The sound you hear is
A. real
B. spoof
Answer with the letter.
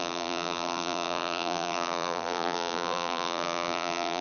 B